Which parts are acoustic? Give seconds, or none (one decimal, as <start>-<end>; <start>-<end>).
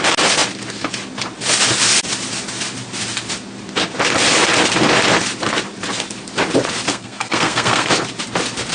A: 0.0-6.9; 7.9-8.7